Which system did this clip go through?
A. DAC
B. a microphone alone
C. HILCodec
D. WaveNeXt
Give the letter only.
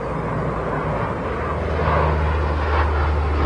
B